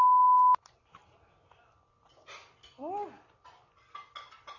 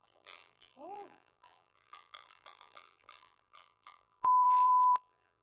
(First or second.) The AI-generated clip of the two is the second